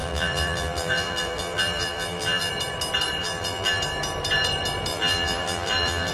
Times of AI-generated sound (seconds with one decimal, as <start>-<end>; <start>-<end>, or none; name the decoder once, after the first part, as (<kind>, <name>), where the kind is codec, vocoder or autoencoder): 0.0-2.5 (vocoder, BigVGAN v2); 3.2-3.8; 4.9-6.1